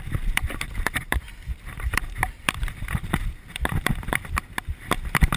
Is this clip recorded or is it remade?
remade